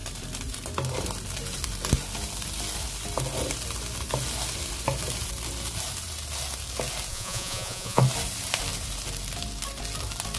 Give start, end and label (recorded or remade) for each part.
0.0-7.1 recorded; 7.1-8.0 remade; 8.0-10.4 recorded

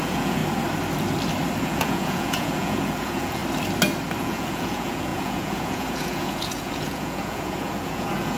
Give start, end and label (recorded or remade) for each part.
0.0-0.4 remade; 0.4-1.6 recorded; 1.6-3.4 remade; 3.4-4.2 recorded; 4.2-8.4 remade

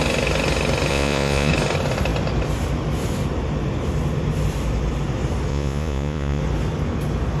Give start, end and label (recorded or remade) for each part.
0.0-0.9 recorded; 0.9-1.5 remade; 1.5-5.5 recorded; 5.5-6.4 remade; 6.4-7.4 recorded